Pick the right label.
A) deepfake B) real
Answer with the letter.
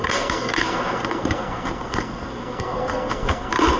A